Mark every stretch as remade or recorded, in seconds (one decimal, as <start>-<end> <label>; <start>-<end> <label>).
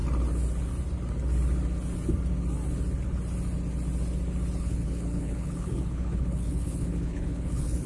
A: 0.0-4.6 recorded; 4.6-7.9 remade